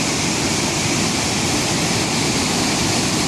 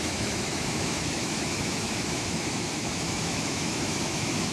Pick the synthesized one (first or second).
second